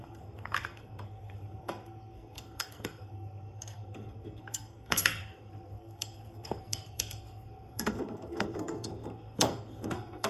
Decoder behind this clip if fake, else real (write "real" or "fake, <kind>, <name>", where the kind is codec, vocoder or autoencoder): fake, codec, SNAC